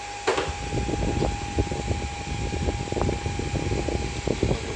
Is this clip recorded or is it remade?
recorded